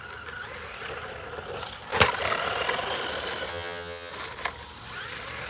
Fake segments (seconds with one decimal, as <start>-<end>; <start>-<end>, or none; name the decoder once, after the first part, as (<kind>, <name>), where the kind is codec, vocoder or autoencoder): 3.5-4.1 (vocoder, HiFi-GAN)